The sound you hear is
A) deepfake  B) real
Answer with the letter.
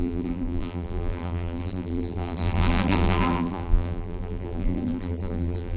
A